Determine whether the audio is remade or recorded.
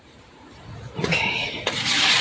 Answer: remade